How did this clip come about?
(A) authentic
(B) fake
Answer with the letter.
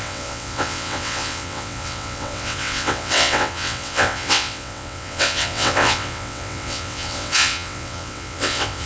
B